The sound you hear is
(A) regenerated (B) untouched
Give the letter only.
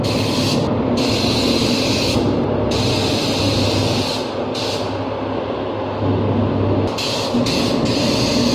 B